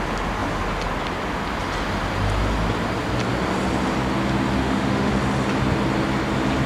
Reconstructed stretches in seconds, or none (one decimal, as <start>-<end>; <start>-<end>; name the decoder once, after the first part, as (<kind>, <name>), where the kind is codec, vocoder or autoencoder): 4.6-5.1 (autoencoder, DAC-VAE)